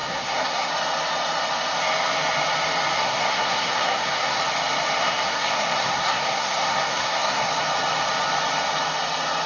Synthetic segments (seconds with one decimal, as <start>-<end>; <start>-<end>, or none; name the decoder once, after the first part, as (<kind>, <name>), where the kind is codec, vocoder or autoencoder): 0.0-0.7 (codec, SNAC); 3.0-4.4; 5.0-7.5